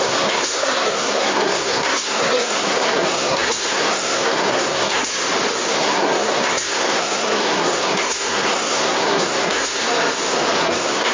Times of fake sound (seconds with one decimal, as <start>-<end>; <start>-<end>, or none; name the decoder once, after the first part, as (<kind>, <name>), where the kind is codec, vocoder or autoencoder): 0.0-5.1 (codec, SNAC); 5.7-9.9; 10.6-11.1